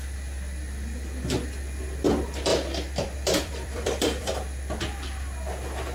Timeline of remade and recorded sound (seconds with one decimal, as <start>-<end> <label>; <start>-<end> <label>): 0.0-2.5 recorded; 2.5-4.8 remade; 4.8-5.9 recorded